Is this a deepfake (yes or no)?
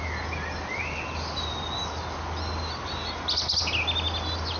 no